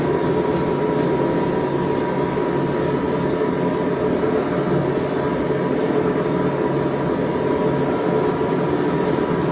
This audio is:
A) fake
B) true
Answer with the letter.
B